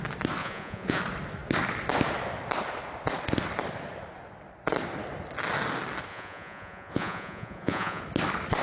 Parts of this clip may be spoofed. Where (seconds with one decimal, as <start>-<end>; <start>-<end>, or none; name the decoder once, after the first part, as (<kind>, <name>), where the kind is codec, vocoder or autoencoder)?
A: 0.4-1.0 (vocoder, Vocos); 6.1-8.0